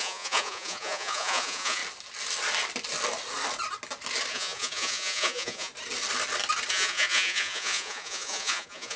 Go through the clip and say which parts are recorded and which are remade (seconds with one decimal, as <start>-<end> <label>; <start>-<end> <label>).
0.0-1.8 remade; 1.8-4.3 recorded; 4.3-5.7 remade; 5.7-6.7 recorded; 6.7-9.0 remade